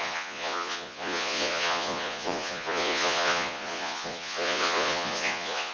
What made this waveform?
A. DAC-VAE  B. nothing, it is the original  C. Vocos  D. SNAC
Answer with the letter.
C